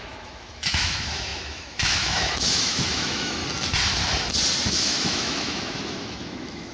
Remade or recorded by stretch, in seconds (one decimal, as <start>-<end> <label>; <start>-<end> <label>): 0.0-3.4 remade; 3.4-4.7 recorded; 4.7-6.7 remade